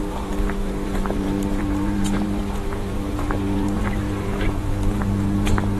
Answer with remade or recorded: remade